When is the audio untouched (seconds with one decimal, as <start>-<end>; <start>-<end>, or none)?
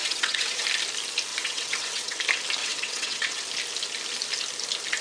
0.6-1.3; 2.2-2.6; 3.4-5.0